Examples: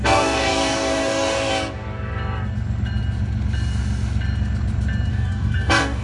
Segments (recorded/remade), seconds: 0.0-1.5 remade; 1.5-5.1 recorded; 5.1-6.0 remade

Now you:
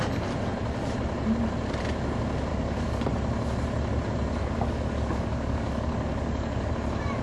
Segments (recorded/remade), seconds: 0.0-2.5 recorded; 2.5-3.1 remade; 3.1-4.4 recorded; 4.4-6.7 remade; 6.7-7.2 recorded

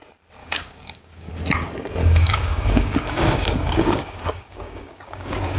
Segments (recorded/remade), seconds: 0.0-0.4 recorded; 0.4-1.3 remade; 1.3-2.0 recorded; 2.0-5.6 remade

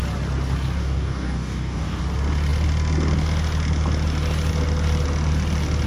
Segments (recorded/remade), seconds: 0.0-0.8 recorded; 0.8-2.0 remade; 2.0-5.9 recorded

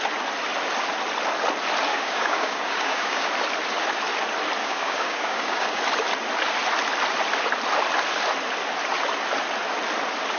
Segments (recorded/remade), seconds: 0.0-1.9 recorded; 1.9-3.3 remade; 3.3-4.6 recorded; 4.6-5.8 remade; 5.8-10.4 recorded

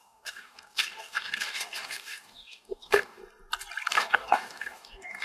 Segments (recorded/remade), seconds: 0.0-3.2 remade; 3.2-3.9 recorded; 3.9-5.2 remade

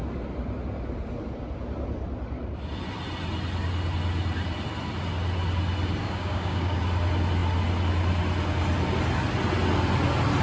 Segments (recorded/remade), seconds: 0.0-6.0 recorded; 6.0-6.8 remade; 6.8-10.4 recorded